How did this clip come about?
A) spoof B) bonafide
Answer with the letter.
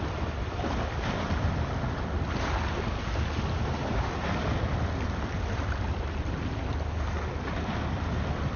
B